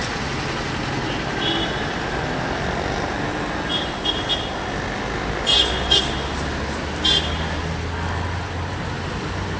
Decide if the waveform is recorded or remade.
recorded